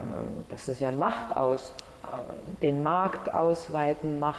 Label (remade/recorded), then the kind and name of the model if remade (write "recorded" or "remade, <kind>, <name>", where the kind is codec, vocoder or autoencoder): remade, codec, SNAC